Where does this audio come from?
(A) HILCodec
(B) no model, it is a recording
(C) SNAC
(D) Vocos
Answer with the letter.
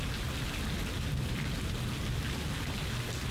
B